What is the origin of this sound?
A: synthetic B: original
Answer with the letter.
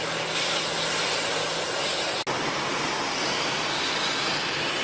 B